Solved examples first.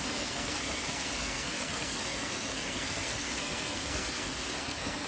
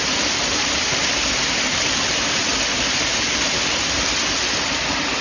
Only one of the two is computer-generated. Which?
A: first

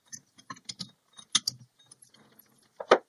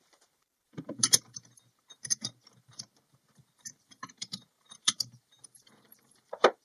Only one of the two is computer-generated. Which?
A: second